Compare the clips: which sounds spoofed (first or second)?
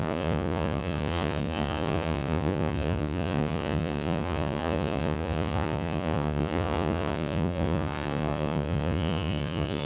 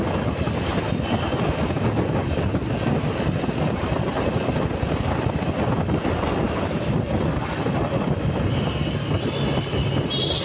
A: first